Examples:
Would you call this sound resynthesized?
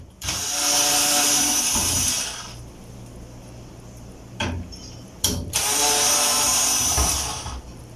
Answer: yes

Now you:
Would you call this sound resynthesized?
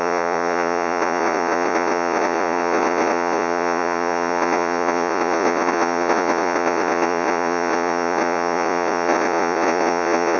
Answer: yes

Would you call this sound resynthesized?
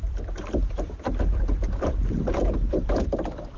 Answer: yes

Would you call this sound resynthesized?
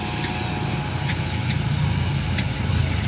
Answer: no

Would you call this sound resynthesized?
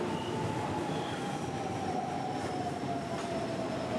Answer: yes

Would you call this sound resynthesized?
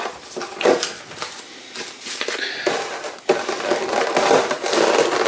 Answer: no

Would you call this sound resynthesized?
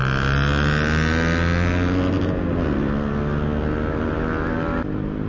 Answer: no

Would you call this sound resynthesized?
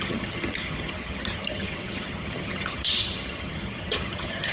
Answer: yes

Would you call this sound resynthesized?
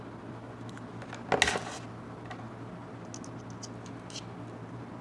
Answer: no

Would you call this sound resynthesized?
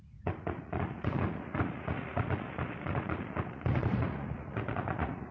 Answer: yes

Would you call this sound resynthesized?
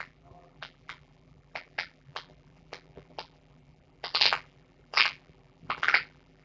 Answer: yes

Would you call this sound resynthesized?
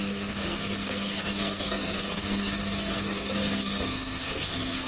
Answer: yes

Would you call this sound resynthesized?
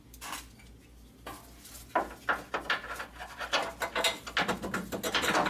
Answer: no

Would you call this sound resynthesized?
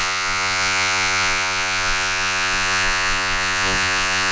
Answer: yes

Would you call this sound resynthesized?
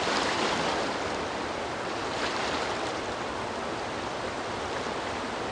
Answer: yes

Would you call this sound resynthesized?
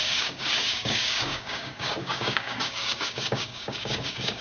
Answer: yes